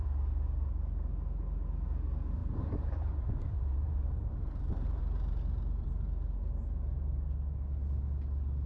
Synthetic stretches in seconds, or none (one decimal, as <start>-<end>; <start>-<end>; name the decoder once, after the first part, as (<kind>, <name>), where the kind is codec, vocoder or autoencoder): 2.4-5.0 (vocoder, BigVGAN v2)

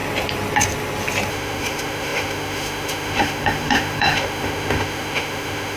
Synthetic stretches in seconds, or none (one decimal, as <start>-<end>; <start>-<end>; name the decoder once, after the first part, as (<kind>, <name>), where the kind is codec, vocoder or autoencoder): 1.3-5.8 (autoencoder, DAC-VAE)

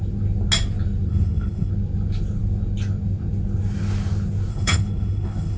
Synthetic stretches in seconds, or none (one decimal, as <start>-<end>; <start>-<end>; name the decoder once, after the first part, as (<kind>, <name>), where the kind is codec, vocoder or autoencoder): 1.1-1.7 (codec, HILCodec); 4.5-5.6